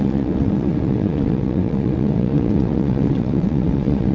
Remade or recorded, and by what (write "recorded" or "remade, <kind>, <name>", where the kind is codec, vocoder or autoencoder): remade, vocoder, WaveNeXt